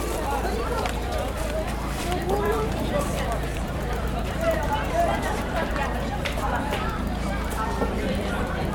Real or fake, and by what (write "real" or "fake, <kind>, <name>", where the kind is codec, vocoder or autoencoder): fake, vocoder, BigVGAN v2